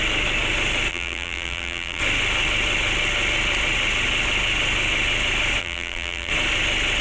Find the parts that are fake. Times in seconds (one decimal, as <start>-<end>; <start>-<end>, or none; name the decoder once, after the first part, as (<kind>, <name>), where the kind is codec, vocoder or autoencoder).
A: 0.9-2.0 (vocoder, BigVGAN v2); 5.6-6.3